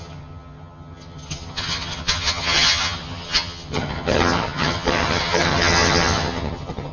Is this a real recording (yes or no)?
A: no